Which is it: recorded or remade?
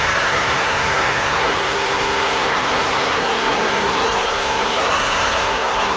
remade